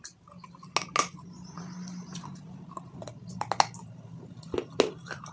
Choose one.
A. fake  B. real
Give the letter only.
B